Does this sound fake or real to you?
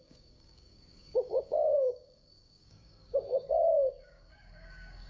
fake